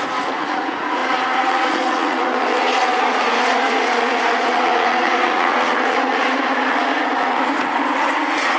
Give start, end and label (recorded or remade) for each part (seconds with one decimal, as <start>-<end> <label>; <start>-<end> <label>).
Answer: 0.0-8.6 remade